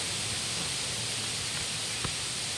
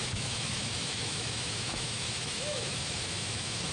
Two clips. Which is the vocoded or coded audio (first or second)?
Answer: second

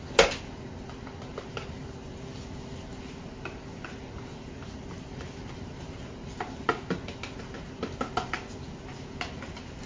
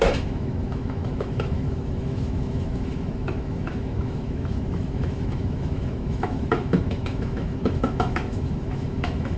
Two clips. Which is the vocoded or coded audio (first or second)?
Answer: second